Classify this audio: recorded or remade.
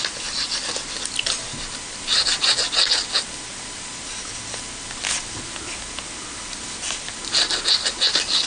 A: recorded